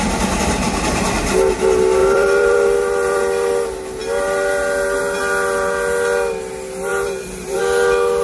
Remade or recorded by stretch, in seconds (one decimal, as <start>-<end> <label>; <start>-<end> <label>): 0.0-2.0 recorded; 2.0-3.2 remade; 3.2-6.9 recorded; 6.9-7.6 remade; 7.6-8.2 recorded